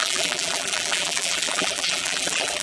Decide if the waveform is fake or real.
fake